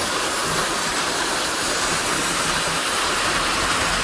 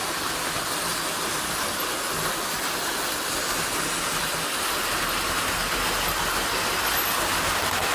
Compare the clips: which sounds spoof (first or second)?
first